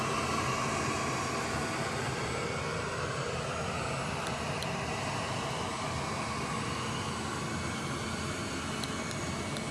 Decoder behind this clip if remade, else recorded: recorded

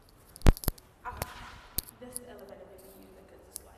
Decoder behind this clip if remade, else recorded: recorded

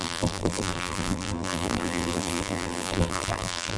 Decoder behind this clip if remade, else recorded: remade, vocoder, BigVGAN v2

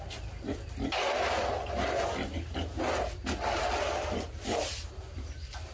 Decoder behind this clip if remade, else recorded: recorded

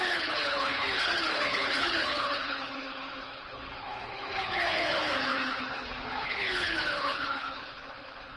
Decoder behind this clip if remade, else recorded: remade, codec, HILCodec